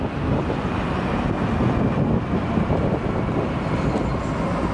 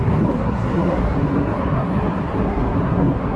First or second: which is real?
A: first